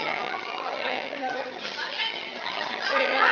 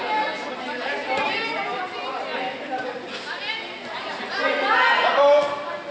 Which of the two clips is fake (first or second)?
first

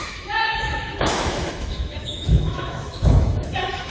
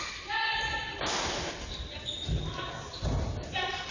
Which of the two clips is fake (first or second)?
first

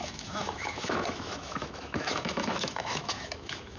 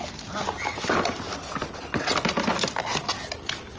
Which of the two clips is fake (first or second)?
first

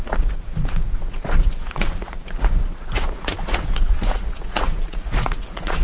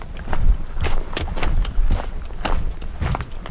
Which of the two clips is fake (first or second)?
first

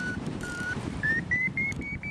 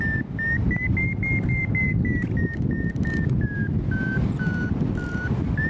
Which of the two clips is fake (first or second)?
first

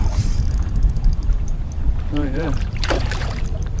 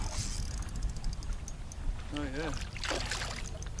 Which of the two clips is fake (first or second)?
first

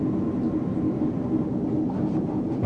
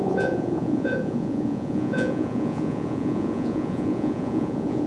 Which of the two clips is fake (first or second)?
second